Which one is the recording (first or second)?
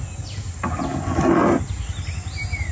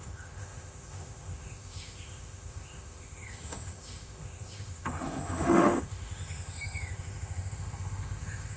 first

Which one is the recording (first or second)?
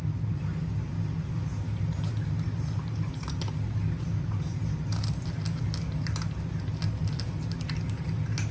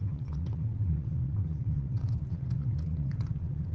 first